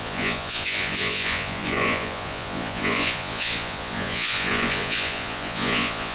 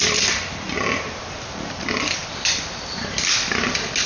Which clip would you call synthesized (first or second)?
first